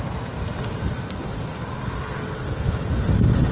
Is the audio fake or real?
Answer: real